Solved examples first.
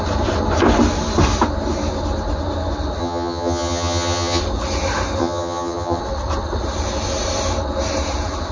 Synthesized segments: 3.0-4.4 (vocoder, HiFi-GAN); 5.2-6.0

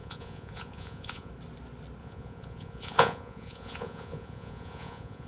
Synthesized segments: 0.0-1.3 (vocoder, Vocos); 2.0-5.3